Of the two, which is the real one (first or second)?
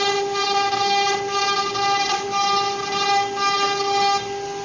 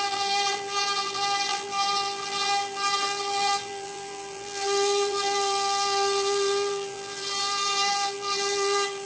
first